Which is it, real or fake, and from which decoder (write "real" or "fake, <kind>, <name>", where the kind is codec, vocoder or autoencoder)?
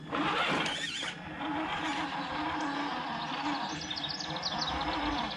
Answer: real